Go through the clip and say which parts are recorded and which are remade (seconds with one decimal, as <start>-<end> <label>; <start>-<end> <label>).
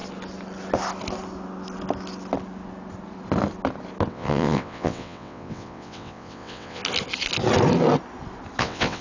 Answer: 0.0-4.1 recorded; 4.1-6.8 remade; 6.8-8.6 recorded; 8.6-9.0 remade